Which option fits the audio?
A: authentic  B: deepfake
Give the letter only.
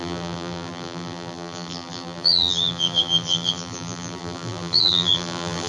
B